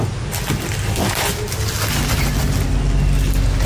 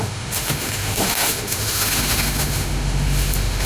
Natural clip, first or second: first